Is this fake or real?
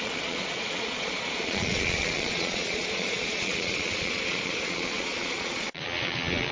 fake